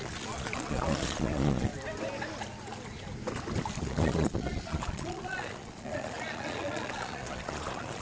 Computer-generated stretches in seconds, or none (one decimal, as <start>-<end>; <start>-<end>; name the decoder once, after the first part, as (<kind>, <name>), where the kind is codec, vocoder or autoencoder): 0.0-1.7 (vocoder, Vocos); 3.8-8.0